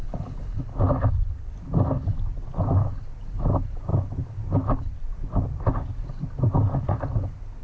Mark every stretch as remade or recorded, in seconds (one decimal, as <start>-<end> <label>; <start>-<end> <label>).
0.0-0.6 remade; 0.6-7.6 recorded